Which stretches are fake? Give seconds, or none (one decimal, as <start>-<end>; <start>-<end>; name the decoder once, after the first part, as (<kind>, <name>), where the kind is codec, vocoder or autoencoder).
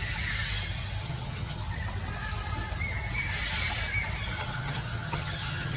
1.0-1.6 (vocoder, HiFi-GAN); 4.4-5.8